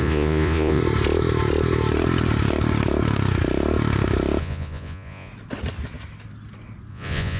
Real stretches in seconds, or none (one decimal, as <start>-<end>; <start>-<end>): 0.8-4.4; 5.3-6.9